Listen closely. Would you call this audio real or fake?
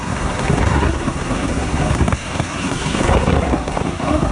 fake